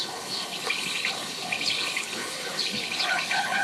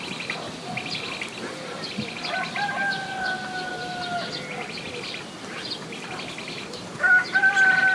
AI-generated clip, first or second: first